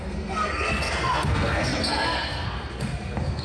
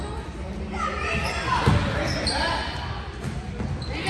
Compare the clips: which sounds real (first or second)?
second